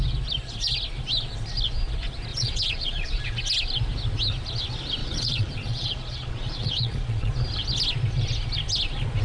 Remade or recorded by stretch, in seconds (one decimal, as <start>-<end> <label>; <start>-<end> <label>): 0.0-2.3 recorded; 2.3-3.2 remade; 3.2-5.0 recorded; 5.0-7.3 remade; 7.3-9.2 recorded